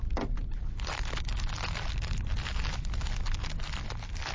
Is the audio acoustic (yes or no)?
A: yes